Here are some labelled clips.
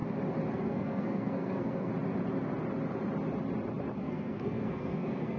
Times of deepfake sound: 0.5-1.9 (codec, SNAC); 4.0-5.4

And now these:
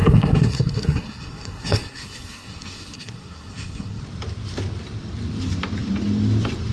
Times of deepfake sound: 0.0-4.0 (codec, SNAC)

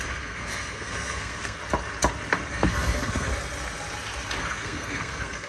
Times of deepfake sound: 0.0-1.6 (codec, SNAC); 2.5-3.3; 4.4-5.5